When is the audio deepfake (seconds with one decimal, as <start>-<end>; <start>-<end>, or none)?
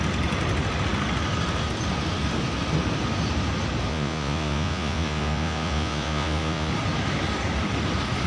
3.9-6.7